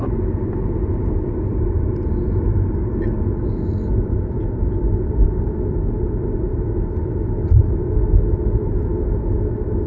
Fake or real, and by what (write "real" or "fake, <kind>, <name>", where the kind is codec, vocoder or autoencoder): real